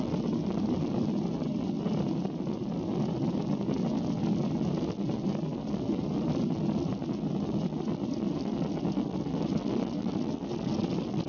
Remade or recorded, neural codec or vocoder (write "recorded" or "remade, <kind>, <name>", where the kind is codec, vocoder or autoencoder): recorded